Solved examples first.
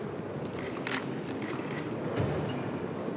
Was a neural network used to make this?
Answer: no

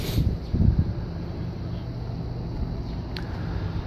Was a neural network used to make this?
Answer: no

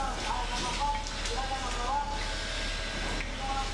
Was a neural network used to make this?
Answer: no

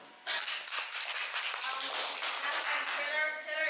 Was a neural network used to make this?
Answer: no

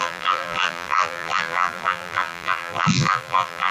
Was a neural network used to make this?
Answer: yes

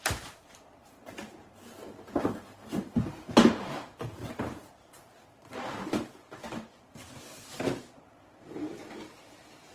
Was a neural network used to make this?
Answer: yes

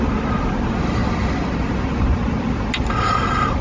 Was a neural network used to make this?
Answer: no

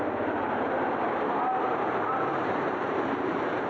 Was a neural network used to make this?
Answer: yes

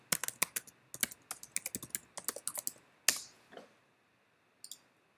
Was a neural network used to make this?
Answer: no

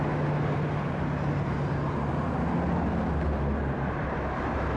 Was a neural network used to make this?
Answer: no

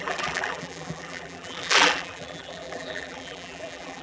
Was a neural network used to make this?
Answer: yes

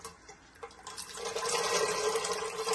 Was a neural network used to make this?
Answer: no